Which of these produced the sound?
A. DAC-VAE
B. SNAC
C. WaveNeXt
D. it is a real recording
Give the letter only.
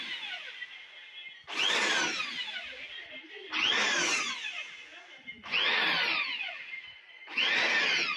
D